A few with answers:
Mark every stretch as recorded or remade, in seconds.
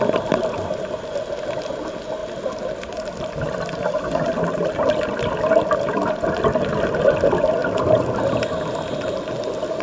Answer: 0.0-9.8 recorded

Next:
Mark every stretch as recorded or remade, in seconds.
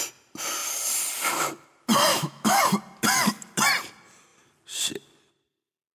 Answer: 0.0-2.1 recorded; 2.1-2.6 remade; 2.6-5.9 recorded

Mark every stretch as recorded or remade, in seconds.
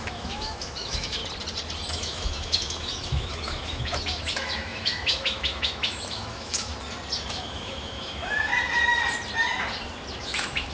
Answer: 0.0-1.2 remade; 1.2-1.9 recorded; 1.9-6.7 remade; 6.7-7.3 recorded; 7.3-8.5 remade; 8.5-10.2 recorded; 10.2-10.7 remade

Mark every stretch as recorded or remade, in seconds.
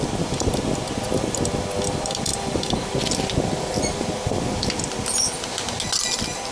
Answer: 0.0-6.5 recorded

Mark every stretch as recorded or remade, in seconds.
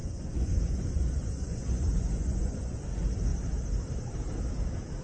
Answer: 0.0-2.9 remade; 2.9-5.0 recorded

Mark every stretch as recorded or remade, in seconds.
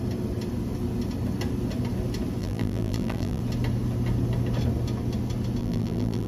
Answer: 0.0-2.4 recorded; 2.4-3.4 remade; 3.4-5.6 recorded; 5.6-6.3 remade